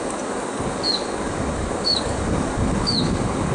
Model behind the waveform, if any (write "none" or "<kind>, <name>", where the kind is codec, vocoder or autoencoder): codec, DAC